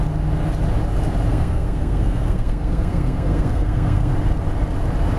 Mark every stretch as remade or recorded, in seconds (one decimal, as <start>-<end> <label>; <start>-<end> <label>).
0.0-1.3 recorded; 1.3-4.1 remade; 4.1-5.2 recorded